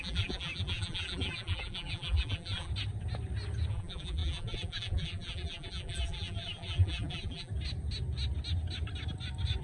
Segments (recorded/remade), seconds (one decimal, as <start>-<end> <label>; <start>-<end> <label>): 0.0-2.7 remade; 2.7-3.7 recorded; 3.7-7.5 remade; 7.5-9.6 recorded